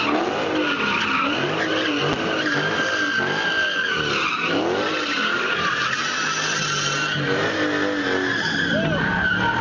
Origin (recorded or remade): recorded